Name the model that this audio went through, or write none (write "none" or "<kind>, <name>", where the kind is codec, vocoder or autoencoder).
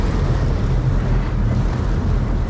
none